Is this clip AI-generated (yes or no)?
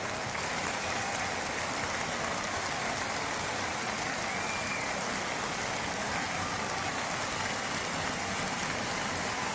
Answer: no